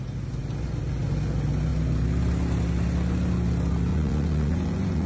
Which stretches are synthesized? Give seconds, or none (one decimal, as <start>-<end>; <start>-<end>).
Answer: 3.9-5.1